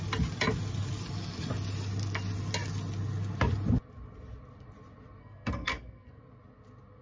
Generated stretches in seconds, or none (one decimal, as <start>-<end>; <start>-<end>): 5.2-6.2